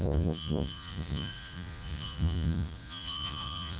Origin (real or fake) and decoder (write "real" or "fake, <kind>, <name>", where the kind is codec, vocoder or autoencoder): fake, vocoder, Vocos